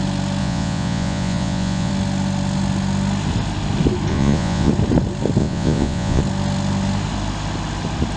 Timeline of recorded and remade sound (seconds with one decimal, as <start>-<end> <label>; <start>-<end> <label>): 0.0-0.4 recorded; 0.4-1.9 remade; 1.9-4.1 recorded; 4.1-4.7 remade; 4.7-5.4 recorded; 5.4-6.2 remade; 6.2-8.2 recorded